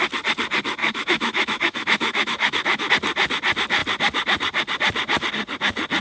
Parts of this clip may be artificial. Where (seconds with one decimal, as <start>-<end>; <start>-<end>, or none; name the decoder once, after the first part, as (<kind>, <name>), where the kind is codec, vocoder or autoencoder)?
0.8-2.9 (autoencoder, DAC-VAE)